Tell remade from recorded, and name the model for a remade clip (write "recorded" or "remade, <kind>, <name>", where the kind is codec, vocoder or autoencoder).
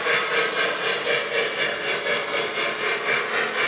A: recorded